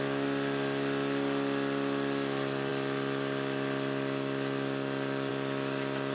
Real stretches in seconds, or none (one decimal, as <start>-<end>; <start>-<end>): 0.0-6.1